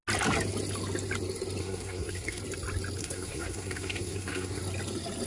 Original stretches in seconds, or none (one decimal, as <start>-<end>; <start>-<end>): 0.0-1.6; 2.4-3.0; 4.6-5.3

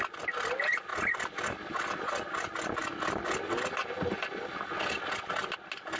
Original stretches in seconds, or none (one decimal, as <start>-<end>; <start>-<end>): 0.0-0.9; 1.9-6.0

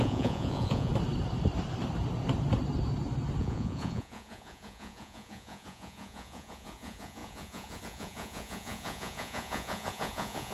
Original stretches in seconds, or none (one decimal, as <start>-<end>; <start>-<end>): 0.9-3.4

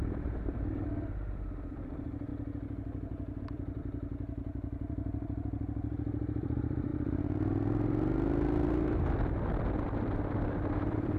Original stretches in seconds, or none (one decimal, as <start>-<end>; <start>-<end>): 2.3-3.4

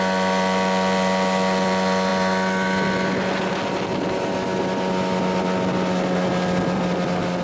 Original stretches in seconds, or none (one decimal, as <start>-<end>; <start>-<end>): 0.0-7.4

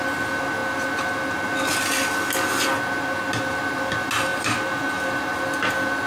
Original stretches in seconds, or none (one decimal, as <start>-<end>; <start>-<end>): 0.0-4.3; 5.4-6.1